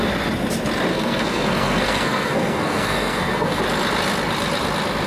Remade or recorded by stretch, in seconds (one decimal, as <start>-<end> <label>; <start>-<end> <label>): 0.0-0.9 recorded; 0.9-3.6 remade; 3.6-5.1 recorded